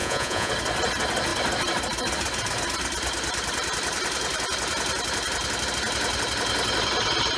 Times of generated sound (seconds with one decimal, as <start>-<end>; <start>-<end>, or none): 0.0-0.5